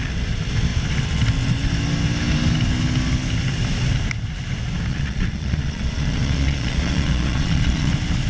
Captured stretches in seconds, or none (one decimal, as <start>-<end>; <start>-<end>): 0.0-4.9; 7.9-8.3